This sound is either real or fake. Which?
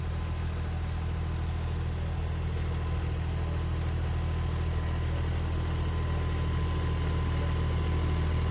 real